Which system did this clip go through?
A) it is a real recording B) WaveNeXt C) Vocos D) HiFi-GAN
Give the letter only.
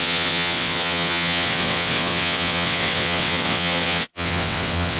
B